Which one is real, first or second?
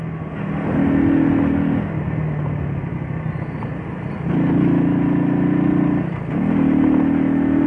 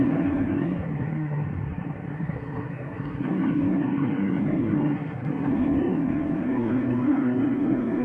first